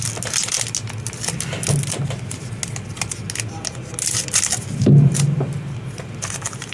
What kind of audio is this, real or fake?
real